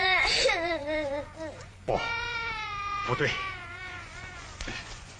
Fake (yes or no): yes